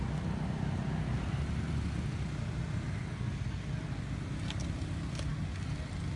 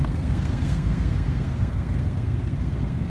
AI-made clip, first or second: second